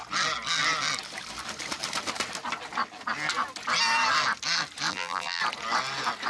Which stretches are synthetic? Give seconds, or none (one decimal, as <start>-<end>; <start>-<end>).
4.9-5.4